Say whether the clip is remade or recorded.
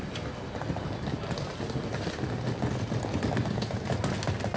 recorded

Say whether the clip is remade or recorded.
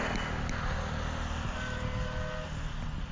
recorded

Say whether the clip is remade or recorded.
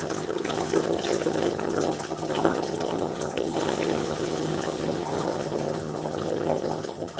remade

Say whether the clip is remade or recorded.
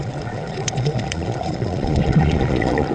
remade